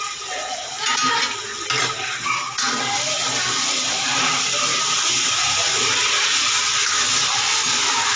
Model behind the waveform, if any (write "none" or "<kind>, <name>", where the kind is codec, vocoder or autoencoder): none